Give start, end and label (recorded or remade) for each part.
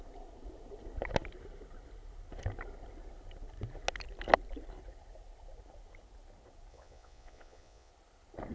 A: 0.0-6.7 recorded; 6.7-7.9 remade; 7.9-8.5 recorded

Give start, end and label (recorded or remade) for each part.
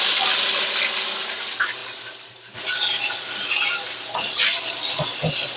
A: 0.0-5.6 recorded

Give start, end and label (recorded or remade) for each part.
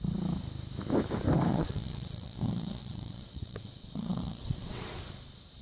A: 0.0-1.5 recorded; 1.5-4.9 remade; 4.9-5.6 recorded